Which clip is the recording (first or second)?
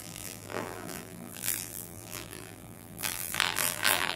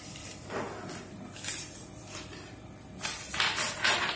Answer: second